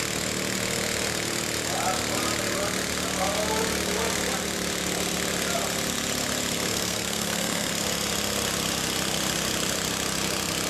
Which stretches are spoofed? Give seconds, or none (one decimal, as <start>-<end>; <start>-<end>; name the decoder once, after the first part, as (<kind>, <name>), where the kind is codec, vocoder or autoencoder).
6.7-7.7 (codec, SNAC)